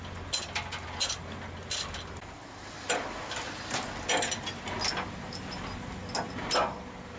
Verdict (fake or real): real